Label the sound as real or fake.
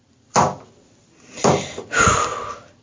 real